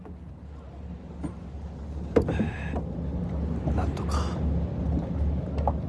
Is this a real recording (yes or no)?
yes